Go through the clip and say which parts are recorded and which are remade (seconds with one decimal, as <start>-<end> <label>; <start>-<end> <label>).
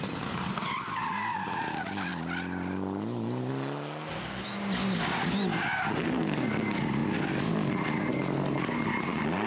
0.0-9.5 recorded